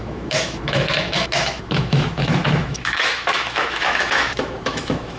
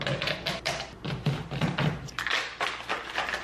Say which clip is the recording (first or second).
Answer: second